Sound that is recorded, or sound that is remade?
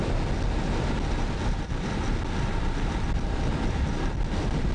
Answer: recorded